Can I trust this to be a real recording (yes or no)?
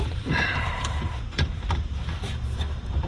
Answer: no